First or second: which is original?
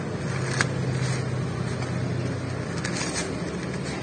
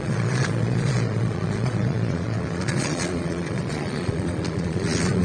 first